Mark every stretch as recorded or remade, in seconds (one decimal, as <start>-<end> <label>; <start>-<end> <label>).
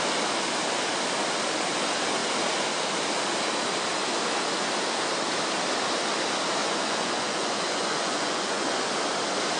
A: 0.0-6.6 recorded; 6.6-8.9 remade; 8.9-9.6 recorded